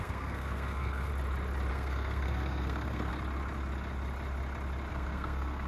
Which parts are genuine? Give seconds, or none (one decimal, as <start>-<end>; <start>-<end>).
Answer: 1.1-1.7; 3.1-4.9